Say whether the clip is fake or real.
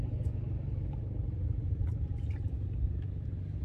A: real